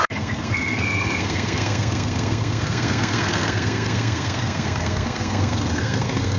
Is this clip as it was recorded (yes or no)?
no